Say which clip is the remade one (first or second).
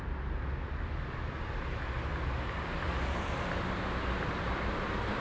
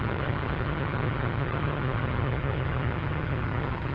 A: second